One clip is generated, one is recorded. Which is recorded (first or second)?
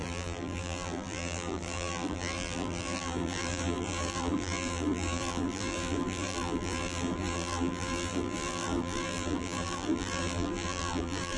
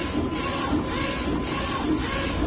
second